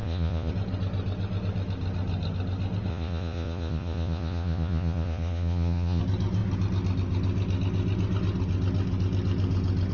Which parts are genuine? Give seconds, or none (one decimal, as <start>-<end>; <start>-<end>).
0.5-2.9; 6.0-9.9